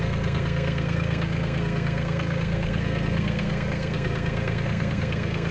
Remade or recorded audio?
remade